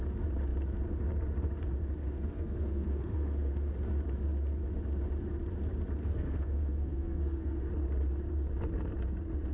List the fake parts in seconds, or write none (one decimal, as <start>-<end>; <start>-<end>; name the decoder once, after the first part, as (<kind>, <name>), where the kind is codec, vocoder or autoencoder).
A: 2.0-3.7 (codec, SNAC); 6.0-7.7